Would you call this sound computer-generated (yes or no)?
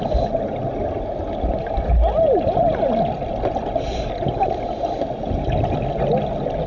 no